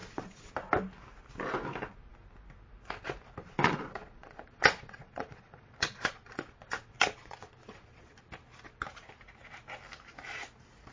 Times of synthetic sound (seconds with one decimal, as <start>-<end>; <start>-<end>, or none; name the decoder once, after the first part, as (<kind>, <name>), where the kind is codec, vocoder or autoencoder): 0.0-0.5 (vocoder, Vocos); 3.4-8.2